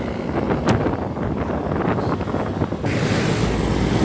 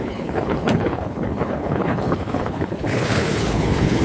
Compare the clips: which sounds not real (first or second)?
second